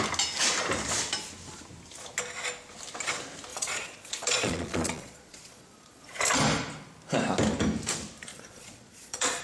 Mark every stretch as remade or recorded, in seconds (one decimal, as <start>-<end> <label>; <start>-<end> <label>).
0.0-3.5 recorded; 3.5-6.2 remade; 6.2-8.3 recorded; 8.3-9.4 remade